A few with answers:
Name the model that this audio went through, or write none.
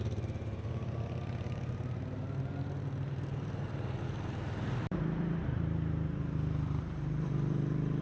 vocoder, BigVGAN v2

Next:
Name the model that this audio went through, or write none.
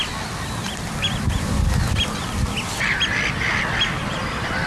none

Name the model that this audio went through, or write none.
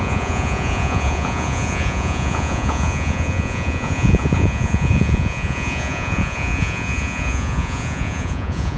vocoder, Vocos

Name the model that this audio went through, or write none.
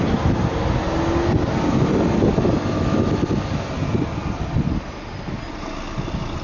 none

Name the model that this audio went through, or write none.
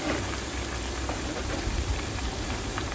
none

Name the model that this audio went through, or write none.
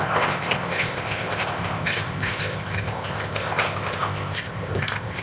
codec, ZipCodec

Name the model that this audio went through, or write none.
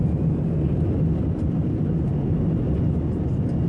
none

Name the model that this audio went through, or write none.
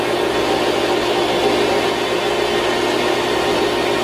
none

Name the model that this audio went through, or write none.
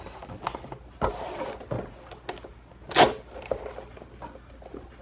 none